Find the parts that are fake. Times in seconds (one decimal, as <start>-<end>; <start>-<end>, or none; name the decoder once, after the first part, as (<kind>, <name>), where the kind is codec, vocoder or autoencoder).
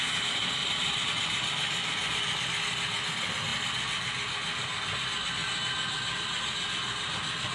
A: 0.6-1.1 (vocoder, BigVGAN v2)